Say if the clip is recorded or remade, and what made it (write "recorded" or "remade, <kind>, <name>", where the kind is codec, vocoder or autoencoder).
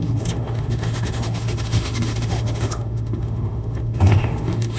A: remade, autoencoder, DAC-VAE